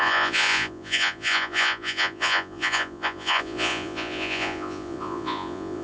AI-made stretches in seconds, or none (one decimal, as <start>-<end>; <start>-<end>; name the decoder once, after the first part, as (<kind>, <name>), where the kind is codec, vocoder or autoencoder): 0.0-5.8 (vocoder, Vocos)